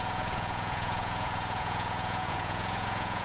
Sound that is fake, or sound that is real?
fake